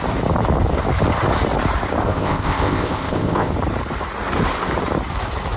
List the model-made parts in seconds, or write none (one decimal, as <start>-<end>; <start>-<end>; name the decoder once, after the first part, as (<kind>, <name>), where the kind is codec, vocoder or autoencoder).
2.0-3.5 (codec, ZipCodec)

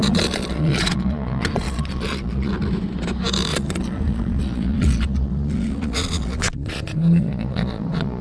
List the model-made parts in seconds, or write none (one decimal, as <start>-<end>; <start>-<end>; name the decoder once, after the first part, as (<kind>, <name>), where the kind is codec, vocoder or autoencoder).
0.0-2.5 (vocoder, Vocos); 3.5-8.2

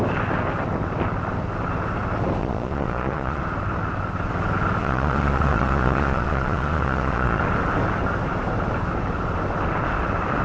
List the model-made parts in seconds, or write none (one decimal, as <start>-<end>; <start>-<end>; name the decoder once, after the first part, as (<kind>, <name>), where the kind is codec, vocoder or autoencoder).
2.4-3.4 (vocoder, Vocos); 4.8-7.4

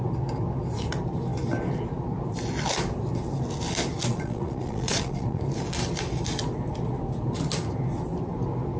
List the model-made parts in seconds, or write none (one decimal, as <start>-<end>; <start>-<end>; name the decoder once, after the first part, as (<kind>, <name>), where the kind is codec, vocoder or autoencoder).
4.1-5.4 (vocoder, Vocos)